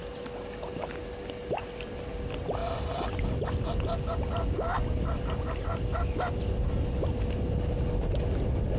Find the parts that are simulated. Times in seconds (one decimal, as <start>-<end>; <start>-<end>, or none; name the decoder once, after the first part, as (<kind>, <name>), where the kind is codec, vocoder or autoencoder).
2.6-3.2 (vocoder, BigVGAN v2)